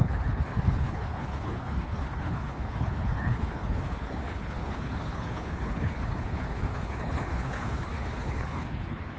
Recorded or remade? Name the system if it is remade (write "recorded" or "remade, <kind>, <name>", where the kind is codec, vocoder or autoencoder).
remade, codec, HILCodec